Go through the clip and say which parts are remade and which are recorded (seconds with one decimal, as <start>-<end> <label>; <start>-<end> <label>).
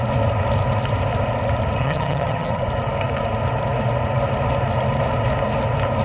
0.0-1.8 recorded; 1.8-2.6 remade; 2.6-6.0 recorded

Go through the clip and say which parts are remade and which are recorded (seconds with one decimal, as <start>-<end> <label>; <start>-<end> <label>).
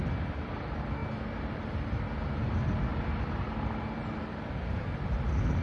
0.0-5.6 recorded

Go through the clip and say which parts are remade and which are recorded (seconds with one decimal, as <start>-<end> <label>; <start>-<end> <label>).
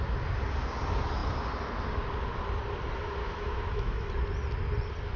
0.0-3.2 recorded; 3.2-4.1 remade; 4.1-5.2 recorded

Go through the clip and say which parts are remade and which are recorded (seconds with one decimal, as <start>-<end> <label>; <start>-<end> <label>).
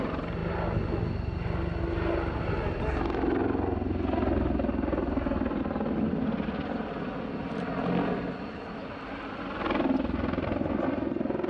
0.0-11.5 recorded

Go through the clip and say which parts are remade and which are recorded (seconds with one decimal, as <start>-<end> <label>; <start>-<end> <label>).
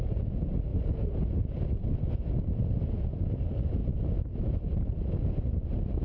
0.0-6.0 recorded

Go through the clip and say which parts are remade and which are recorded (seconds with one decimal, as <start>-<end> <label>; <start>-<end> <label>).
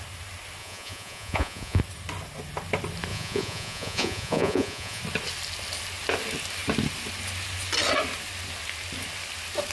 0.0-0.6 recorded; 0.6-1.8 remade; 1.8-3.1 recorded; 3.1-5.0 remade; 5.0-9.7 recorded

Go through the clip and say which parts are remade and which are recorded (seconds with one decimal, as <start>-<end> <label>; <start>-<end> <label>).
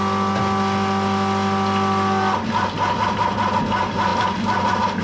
0.0-5.0 recorded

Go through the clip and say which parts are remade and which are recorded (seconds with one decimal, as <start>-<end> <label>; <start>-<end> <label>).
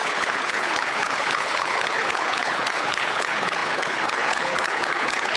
0.0-5.4 remade